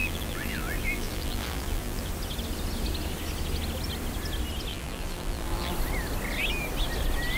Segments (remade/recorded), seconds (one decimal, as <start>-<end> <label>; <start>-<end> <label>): 0.0-2.1 remade; 2.1-4.7 recorded; 4.7-5.7 remade; 5.7-7.4 recorded